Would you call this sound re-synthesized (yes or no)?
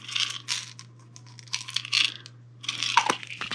no